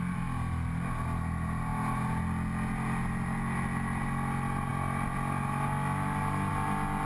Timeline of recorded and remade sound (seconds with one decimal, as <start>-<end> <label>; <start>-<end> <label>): 0.0-7.1 recorded

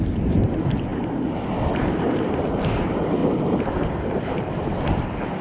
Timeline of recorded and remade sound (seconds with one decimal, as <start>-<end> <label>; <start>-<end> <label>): 0.0-0.9 remade; 0.9-2.0 recorded; 2.0-3.2 remade; 3.2-3.8 recorded; 3.8-5.4 remade

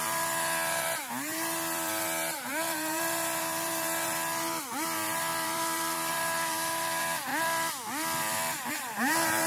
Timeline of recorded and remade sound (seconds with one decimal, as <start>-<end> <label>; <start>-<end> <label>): 0.0-7.3 remade; 7.3-8.7 recorded; 8.7-9.5 remade

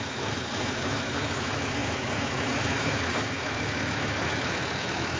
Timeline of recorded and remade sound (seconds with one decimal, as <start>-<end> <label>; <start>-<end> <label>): 0.0-5.2 remade

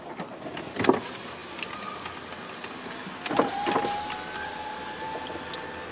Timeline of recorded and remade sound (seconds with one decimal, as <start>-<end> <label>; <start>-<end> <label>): 0.0-5.9 recorded

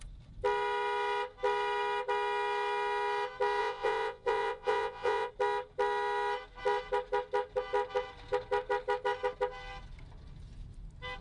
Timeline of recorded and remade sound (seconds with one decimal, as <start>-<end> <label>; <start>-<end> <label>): 0.0-3.6 recorded; 3.6-5.3 remade; 5.3-11.2 recorded